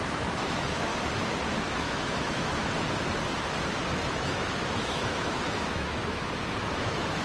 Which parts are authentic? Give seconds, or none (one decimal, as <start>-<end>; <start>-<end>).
0.9-1.6; 2.6-4.1